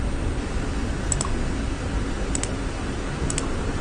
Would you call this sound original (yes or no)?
yes